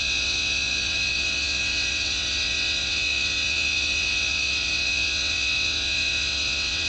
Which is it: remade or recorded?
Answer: remade